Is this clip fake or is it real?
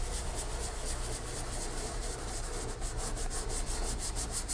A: fake